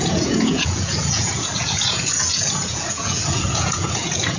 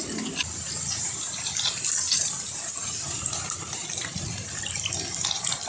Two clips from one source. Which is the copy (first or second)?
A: first